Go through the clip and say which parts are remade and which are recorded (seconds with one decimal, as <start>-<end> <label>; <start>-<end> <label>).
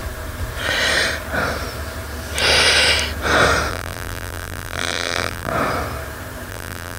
0.0-3.7 recorded; 3.7-5.5 remade; 5.5-6.5 recorded; 6.5-7.0 remade